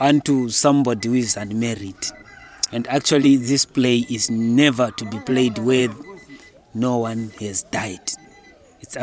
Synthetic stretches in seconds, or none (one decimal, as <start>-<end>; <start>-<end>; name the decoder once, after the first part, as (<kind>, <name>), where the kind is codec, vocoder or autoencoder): 1.8-4.0 (vocoder, Vocos)